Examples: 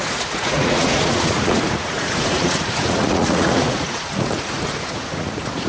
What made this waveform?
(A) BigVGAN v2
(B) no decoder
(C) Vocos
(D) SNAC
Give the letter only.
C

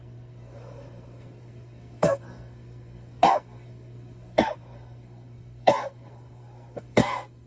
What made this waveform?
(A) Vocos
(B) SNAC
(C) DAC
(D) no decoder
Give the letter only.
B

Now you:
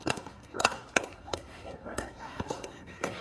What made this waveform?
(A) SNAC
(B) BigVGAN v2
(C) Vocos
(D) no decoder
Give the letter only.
A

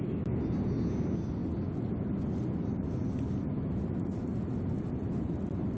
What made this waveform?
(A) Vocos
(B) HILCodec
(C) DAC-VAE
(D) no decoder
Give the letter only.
D